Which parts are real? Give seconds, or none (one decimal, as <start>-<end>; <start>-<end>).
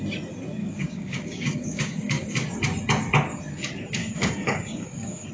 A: 0.0-0.6; 2.3-4.0